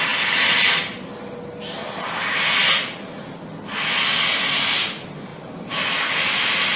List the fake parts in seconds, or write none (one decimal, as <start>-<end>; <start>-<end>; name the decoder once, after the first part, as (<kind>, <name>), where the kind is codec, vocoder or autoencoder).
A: 5.3-6.8 (vocoder, BigVGAN v2)